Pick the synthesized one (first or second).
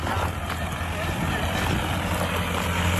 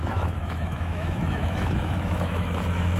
second